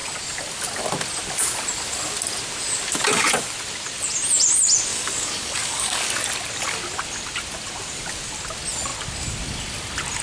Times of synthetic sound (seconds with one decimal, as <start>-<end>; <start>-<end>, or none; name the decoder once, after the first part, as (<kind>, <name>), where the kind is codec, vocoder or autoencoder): 4.9-6.1 (codec, DAC)